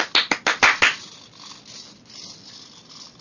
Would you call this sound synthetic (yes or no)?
no